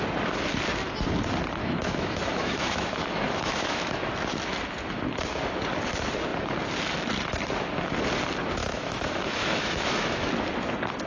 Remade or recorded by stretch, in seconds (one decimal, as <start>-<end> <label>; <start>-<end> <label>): 0.0-1.6 recorded; 1.6-4.1 remade; 4.1-8.6 recorded; 8.6-10.3 remade; 10.3-11.1 recorded

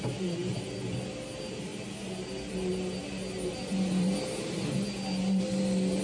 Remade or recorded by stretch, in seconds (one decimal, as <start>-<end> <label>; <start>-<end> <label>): 0.0-6.0 recorded

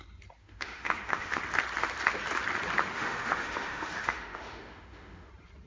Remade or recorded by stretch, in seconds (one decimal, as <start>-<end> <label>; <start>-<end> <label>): 0.0-0.4 recorded; 0.4-1.4 remade; 1.4-2.9 recorded; 2.9-5.3 remade; 5.3-5.7 recorded

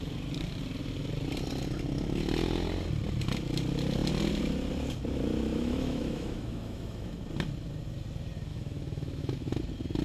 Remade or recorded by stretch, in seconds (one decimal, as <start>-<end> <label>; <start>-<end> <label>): 0.0-5.5 recorded; 5.5-7.2 remade; 7.2-8.5 recorded; 8.5-9.6 remade; 9.6-10.0 recorded

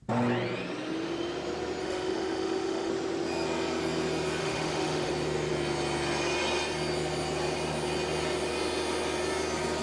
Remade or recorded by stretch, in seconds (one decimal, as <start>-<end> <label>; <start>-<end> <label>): 0.0-1.8 recorded; 1.8-2.9 remade; 2.9-4.4 recorded; 4.4-5.1 remade; 5.1-9.8 recorded

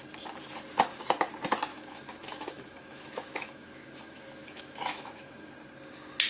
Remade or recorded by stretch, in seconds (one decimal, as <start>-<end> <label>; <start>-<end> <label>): 0.0-1.7 recorded; 1.7-5.5 remade; 5.5-6.3 recorded

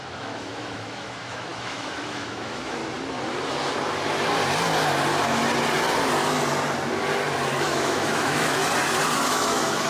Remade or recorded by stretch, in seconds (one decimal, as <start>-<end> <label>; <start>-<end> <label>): 0.0-2.8 remade; 2.8-7.6 recorded; 7.6-8.6 remade; 8.6-9.3 recorded; 9.3-9.9 remade

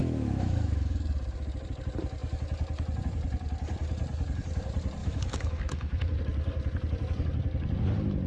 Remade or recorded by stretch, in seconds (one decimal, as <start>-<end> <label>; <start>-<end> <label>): 0.0-1.0 remade; 1.0-5.0 recorded; 5.0-6.2 remade; 6.2-8.3 recorded